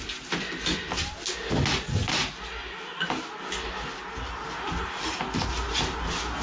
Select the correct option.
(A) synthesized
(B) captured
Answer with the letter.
B